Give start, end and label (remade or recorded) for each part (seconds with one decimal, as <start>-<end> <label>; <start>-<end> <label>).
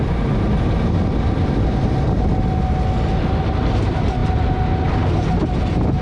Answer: 0.0-6.0 recorded